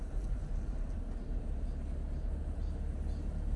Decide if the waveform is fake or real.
real